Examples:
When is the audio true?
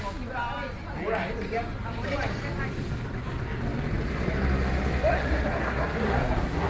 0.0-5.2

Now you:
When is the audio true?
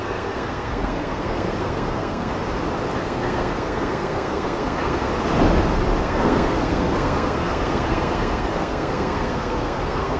2.3-3.0; 5.1-6.0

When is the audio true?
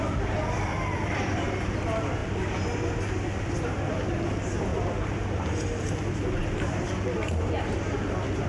0.0-8.5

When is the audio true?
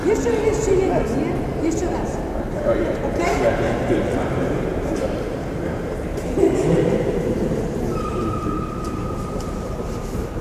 0.5-1.3